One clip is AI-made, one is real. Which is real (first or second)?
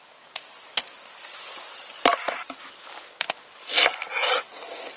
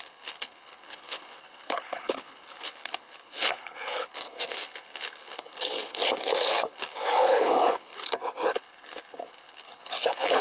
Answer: first